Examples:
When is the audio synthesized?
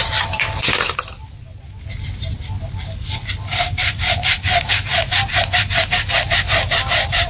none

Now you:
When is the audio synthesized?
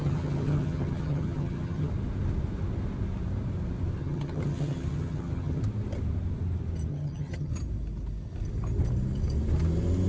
0.0-1.9 (vocoder, HiFi-GAN); 4.0-5.6; 6.9-7.5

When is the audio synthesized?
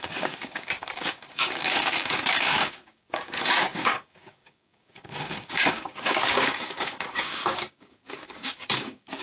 0.0-9.2 (codec, DAC)